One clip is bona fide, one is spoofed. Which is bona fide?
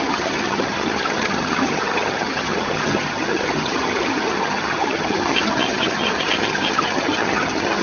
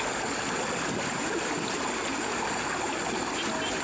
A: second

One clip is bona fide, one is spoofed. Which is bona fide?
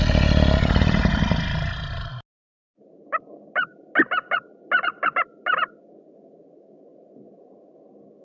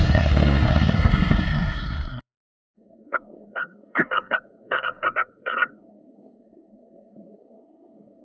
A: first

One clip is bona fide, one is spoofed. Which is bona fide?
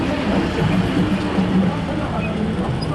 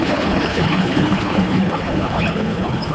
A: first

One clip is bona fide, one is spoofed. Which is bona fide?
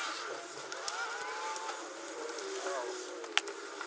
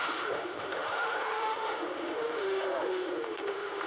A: first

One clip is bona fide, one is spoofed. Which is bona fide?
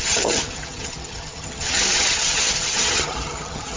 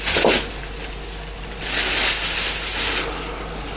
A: second